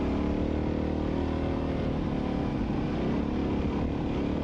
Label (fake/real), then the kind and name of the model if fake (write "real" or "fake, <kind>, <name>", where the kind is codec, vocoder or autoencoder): real